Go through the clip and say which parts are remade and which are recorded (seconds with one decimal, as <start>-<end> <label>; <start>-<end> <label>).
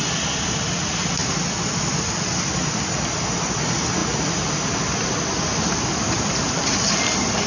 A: 0.0-7.5 recorded